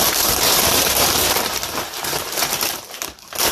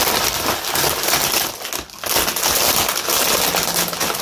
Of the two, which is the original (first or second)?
second